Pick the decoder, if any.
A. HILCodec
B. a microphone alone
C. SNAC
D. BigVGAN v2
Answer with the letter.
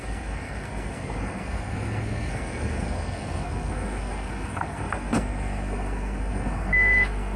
C